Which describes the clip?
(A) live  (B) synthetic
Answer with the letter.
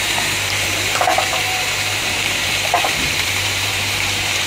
B